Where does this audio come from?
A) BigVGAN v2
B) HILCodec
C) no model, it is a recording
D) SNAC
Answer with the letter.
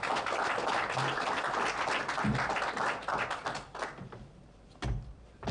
C